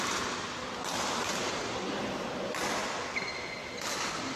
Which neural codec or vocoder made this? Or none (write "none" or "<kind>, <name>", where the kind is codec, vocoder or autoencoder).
none